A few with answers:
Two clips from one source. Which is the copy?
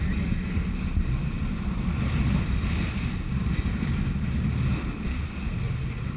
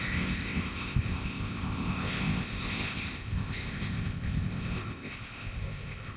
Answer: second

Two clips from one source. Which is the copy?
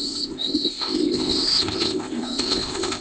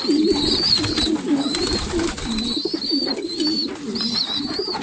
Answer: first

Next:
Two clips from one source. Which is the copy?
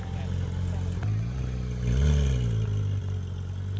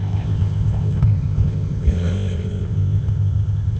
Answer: second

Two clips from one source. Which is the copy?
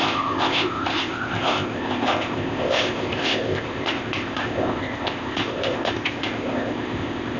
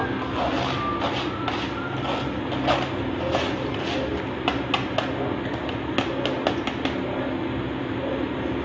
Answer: first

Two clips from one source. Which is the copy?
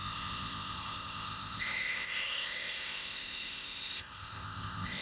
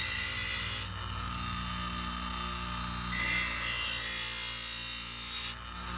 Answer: first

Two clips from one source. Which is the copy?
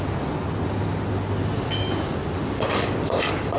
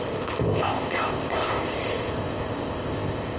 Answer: second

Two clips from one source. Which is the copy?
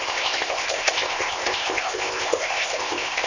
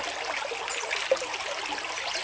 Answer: first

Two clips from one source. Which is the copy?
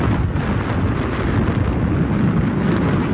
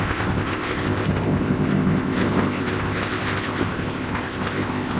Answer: second